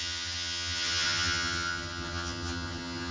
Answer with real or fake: fake